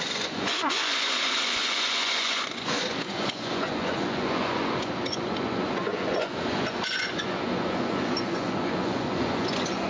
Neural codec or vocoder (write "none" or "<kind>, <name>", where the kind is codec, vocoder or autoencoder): vocoder, Vocos